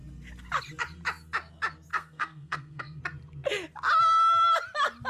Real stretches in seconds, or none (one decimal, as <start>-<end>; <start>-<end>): 0.0-1.9; 3.0-5.1